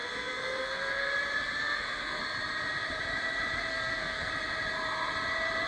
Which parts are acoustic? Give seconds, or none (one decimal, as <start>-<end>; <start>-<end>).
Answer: 1.1-1.6; 2.2-3.7; 4.3-5.7